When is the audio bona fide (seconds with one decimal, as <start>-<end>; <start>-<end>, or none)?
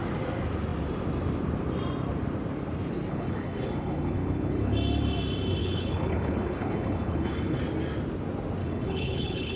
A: 0.0-3.1; 4.7-5.6; 7.6-8.6